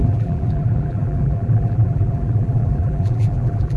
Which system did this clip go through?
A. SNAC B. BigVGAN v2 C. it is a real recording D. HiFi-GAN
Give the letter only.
B